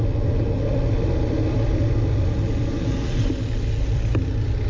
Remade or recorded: recorded